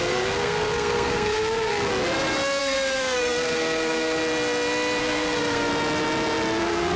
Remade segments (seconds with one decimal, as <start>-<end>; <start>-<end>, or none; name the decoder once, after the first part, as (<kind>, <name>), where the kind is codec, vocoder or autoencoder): 0.0-1.9 (codec, SNAC); 2.6-4.2; 5.0-5.7; 6.6-7.0